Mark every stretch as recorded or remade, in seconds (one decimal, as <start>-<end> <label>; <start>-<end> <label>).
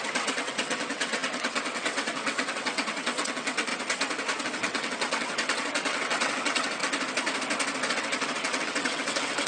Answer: 0.0-3.7 remade; 3.7-4.4 recorded; 4.4-6.8 remade; 6.8-7.9 recorded; 7.9-9.5 remade